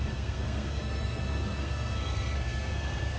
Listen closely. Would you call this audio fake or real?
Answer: fake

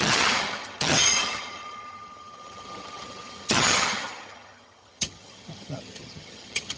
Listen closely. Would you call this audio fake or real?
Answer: fake